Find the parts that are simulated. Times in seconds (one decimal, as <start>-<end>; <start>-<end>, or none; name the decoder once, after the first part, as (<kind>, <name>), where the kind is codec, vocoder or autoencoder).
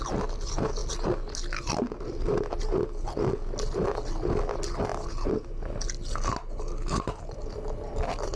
none